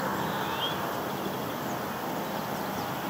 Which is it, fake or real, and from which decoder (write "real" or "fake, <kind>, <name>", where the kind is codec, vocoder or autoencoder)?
real